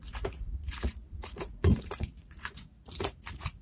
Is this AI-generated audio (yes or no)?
yes